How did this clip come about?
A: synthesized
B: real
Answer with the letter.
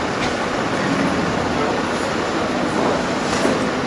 B